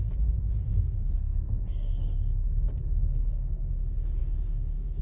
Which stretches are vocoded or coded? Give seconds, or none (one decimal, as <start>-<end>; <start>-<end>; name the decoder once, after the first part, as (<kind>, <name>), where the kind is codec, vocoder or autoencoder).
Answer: 0.7-3.7 (codec, SNAC); 4.2-5.0